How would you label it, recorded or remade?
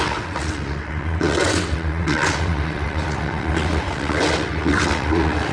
remade